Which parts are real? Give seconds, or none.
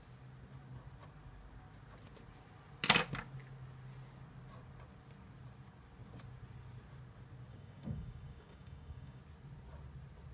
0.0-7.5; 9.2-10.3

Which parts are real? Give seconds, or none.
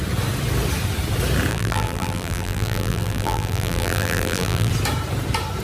0.0-1.5; 4.7-5.6